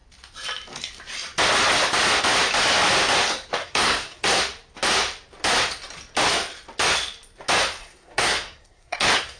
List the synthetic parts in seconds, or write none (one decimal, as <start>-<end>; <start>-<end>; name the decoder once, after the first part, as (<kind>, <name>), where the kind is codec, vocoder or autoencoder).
3.6-4.4 (codec, SNAC); 7.8-9.4